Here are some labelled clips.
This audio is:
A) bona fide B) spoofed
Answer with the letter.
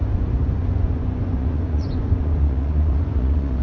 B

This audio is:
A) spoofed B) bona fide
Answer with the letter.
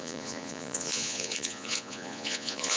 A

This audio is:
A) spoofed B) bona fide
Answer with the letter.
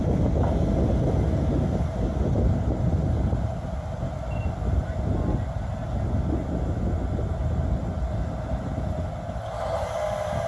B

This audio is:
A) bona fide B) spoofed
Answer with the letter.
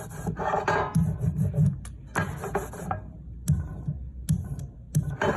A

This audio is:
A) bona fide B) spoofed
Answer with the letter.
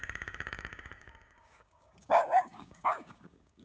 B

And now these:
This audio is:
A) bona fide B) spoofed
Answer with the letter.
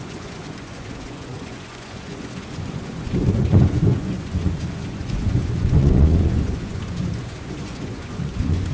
B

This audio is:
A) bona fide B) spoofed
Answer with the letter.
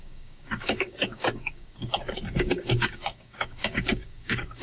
B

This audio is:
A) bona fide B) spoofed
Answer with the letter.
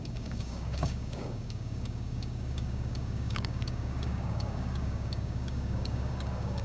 B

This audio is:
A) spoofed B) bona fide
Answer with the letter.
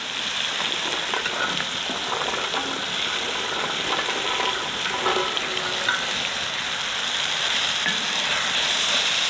B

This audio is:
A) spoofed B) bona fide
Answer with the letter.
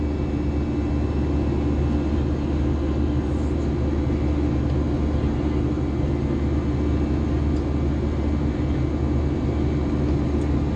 B